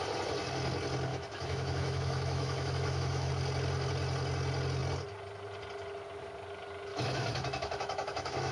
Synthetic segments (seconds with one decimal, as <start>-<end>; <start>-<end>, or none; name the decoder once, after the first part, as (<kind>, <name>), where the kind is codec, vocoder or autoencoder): 1.1-3.3 (autoencoder, DAC-VAE); 6.9-8.5

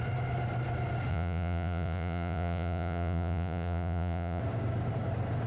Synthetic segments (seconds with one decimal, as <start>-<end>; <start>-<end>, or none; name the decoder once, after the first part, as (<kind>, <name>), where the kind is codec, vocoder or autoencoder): 1.1-4.4 (vocoder, Vocos)

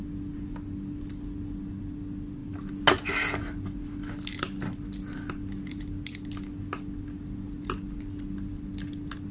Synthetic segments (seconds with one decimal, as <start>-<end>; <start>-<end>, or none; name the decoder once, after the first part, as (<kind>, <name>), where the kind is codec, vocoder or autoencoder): none

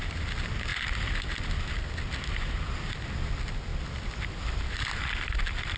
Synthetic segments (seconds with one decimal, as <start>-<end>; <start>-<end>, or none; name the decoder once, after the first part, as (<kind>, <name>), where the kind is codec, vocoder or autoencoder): none